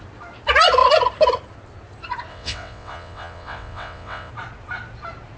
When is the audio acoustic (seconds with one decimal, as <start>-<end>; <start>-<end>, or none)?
0.0-2.3; 4.3-5.4